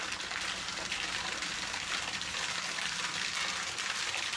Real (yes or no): yes